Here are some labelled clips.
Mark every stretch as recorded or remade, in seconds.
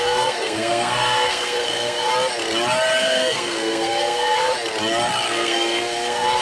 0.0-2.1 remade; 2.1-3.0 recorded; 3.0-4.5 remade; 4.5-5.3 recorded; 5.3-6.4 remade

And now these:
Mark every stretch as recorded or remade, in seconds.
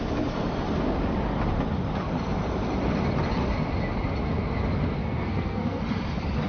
0.0-5.0 recorded; 5.0-5.8 remade; 5.8-6.5 recorded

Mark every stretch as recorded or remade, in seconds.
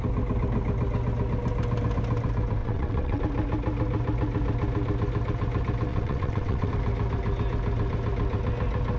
0.0-2.6 recorded; 2.6-3.2 remade; 3.2-5.9 recorded; 5.9-6.7 remade; 6.7-9.0 recorded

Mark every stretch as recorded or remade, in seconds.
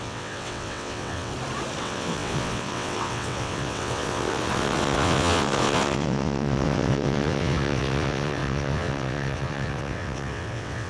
0.0-1.3 remade; 1.3-1.8 recorded; 1.8-10.9 remade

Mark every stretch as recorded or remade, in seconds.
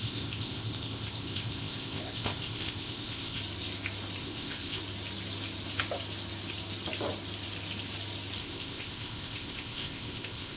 0.0-3.4 remade; 3.4-4.2 recorded; 4.2-4.8 remade; 4.8-8.4 recorded; 8.4-10.6 remade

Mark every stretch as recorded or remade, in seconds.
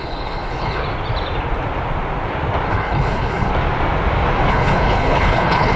0.0-0.8 remade; 0.8-2.7 recorded; 2.7-3.5 remade; 3.5-4.5 recorded; 4.5-5.8 remade